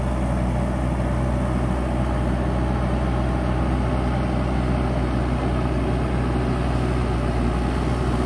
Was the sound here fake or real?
real